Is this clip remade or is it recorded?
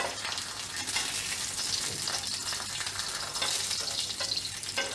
recorded